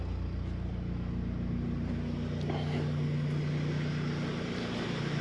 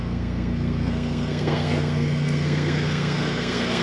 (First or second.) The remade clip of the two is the second